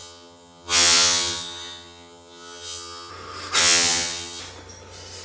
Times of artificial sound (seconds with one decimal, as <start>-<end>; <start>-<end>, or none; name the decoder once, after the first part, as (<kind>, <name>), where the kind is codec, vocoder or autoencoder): 0.0-3.1 (vocoder, HiFi-GAN); 3.6-4.4